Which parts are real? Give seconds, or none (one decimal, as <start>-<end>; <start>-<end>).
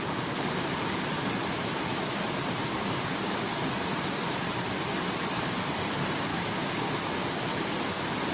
0.0-2.7; 3.5-6.3; 6.9-8.3